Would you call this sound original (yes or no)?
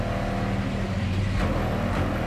yes